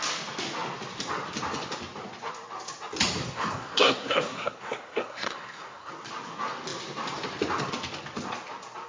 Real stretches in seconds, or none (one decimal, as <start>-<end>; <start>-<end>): 0.0-3.2; 5.9-8.9